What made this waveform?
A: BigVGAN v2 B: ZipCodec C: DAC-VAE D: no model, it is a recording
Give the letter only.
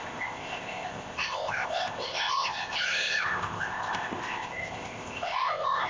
B